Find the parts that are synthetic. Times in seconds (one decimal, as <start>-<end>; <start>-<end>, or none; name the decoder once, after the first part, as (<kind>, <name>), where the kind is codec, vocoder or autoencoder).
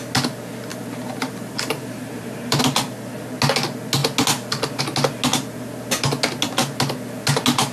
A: 0.7-2.6 (vocoder, BigVGAN v2)